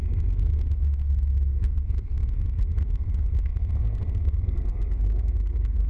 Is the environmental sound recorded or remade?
remade